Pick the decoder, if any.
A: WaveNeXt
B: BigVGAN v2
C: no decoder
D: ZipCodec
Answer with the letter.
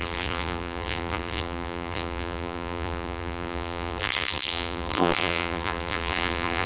B